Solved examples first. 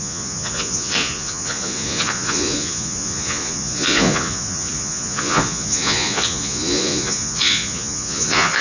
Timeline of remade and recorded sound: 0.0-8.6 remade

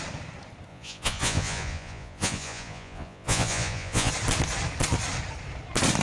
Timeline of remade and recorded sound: 0.0-0.7 recorded; 0.7-4.1 remade; 4.1-6.0 recorded

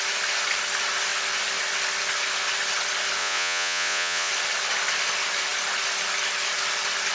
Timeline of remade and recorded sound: 0.0-3.2 recorded; 3.2-4.3 remade; 4.3-7.1 recorded